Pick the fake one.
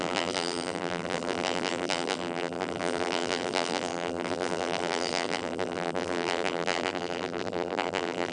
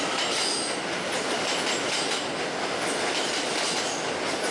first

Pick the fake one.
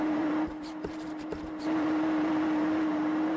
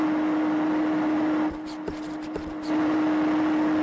first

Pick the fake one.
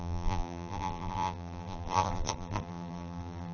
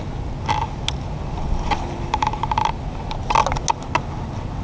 first